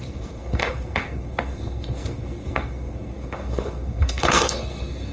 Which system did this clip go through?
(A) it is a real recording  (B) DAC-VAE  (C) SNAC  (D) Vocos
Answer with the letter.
C